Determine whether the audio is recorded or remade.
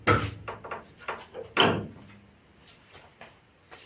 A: recorded